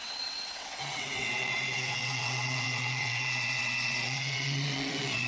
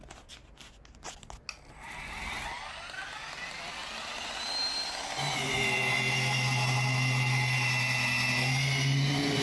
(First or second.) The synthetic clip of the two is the first